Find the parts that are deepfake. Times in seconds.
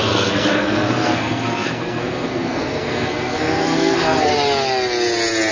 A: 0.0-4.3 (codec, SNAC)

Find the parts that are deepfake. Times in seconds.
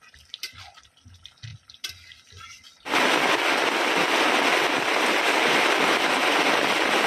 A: none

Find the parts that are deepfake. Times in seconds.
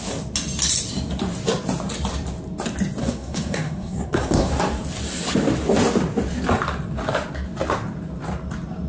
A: 3.0-4.5 (codec, SNAC)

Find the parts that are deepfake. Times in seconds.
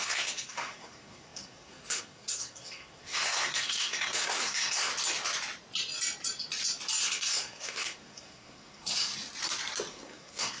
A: 0.0-4.9 (codec, SNAC); 7.0-9.1; 9.9-10.6